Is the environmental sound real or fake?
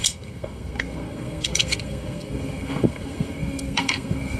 fake